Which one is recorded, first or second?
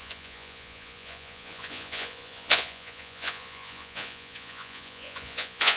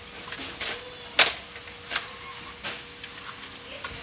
second